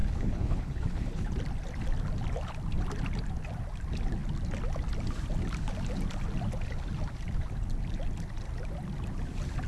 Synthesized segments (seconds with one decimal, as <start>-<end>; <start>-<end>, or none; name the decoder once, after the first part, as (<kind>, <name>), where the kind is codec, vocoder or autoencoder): 0.0-1.3 (codec, HILCodec)